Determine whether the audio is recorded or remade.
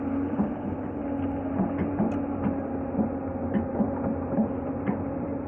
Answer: recorded